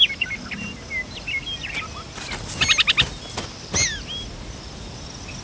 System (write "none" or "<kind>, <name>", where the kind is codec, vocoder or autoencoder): none